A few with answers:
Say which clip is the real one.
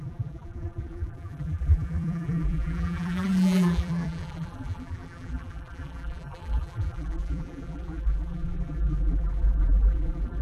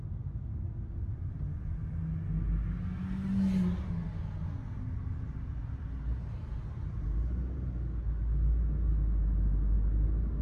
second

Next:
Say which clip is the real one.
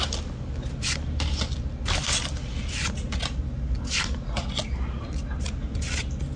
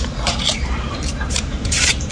first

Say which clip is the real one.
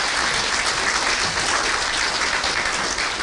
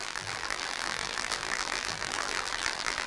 first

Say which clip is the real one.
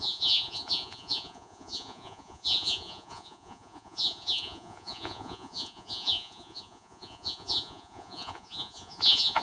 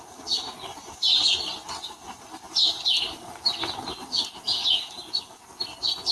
second